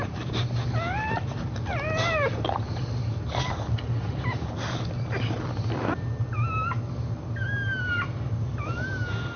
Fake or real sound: real